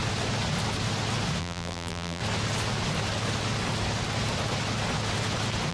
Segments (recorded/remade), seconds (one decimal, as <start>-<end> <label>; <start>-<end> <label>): 0.0-1.4 recorded; 1.4-2.2 remade; 2.2-5.7 recorded